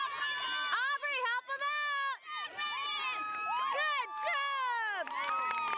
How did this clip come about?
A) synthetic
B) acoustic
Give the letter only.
B